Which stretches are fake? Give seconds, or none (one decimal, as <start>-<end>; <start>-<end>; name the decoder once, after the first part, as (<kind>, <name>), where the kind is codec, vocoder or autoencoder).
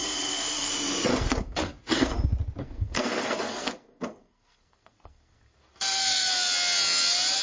0.0-0.7 (codec, SNAC); 1.1-2.2; 2.6-6.3